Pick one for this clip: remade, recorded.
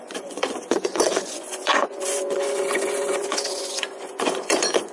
remade